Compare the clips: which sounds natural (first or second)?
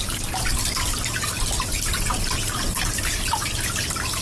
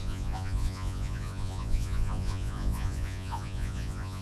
first